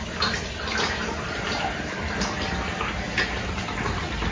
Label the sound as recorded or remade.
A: recorded